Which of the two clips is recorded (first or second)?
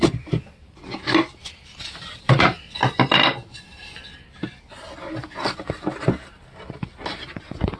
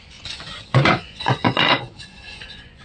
first